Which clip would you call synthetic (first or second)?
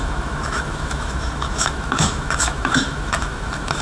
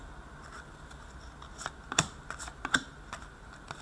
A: first